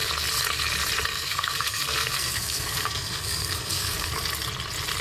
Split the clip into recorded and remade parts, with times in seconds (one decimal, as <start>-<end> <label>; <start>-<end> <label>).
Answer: 0.0-1.1 recorded; 1.1-4.1 remade; 4.1-5.0 recorded